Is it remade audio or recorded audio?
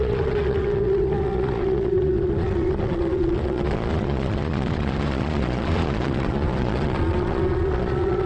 remade